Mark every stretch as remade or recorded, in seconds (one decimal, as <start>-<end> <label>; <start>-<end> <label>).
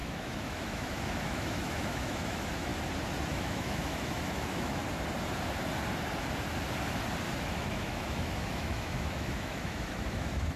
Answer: 0.0-2.7 remade; 2.7-3.3 recorded; 3.3-4.8 remade; 4.8-7.6 recorded; 7.6-10.6 remade